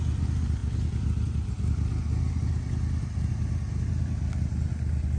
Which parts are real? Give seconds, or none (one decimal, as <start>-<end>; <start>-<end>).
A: 0.0-5.2